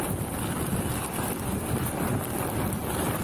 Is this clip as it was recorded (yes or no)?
yes